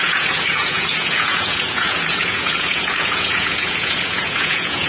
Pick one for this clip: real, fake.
fake